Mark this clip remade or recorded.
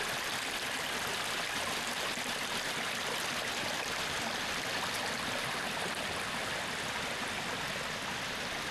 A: recorded